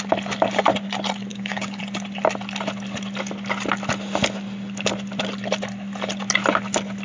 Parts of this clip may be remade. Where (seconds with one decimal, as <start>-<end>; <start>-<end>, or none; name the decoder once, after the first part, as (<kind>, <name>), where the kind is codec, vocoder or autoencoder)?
1.3-1.8 (codec, DAC)